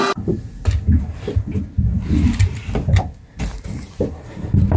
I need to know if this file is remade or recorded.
recorded